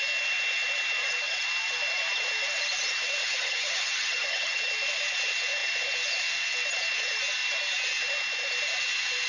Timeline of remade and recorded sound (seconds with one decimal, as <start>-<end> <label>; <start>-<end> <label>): 0.0-3.2 recorded; 3.2-4.6 remade; 4.6-9.3 recorded

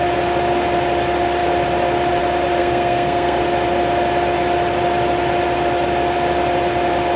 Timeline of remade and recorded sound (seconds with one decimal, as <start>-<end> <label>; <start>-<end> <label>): 0.0-2.6 recorded; 2.6-3.4 remade; 3.4-7.2 recorded

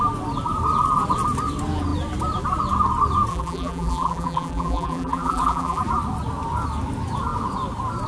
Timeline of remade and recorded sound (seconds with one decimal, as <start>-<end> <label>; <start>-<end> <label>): 0.0-3.3 recorded; 3.3-5.8 remade; 5.8-8.1 recorded

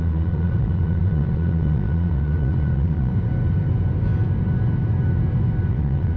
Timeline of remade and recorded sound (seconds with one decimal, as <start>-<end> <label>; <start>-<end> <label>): 0.0-3.1 remade; 3.1-5.7 recorded; 5.7-6.2 remade

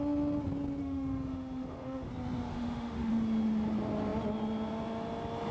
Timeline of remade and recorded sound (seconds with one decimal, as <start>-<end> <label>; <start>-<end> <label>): 0.0-0.8 recorded; 0.8-2.1 remade; 2.1-2.5 recorded; 2.5-3.1 remade; 3.1-5.5 recorded

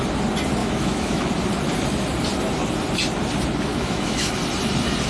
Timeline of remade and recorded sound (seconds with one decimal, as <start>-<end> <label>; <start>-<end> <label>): 0.0-0.6 recorded; 0.6-1.3 remade; 1.3-3.7 recorded; 3.7-4.3 remade; 4.3-5.1 recorded